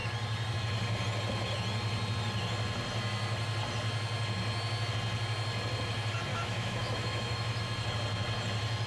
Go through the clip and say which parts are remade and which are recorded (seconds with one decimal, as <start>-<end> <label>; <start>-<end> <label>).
0.0-6.3 recorded; 6.3-7.6 remade; 7.6-8.9 recorded